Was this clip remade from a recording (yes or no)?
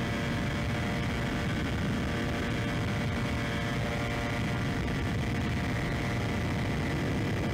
no